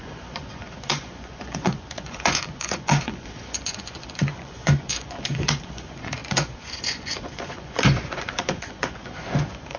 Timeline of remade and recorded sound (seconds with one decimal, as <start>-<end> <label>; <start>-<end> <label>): 0.0-9.8 remade